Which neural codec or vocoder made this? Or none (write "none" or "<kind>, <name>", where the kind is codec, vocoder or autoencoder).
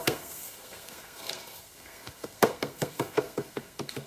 codec, SNAC